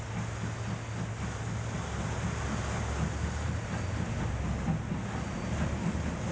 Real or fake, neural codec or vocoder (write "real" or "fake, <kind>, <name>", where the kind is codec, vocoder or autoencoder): real